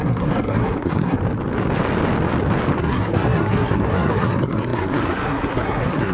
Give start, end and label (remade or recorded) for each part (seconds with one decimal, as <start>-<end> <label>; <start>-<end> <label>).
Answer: 0.0-1.2 remade; 1.2-2.8 recorded; 2.8-6.1 remade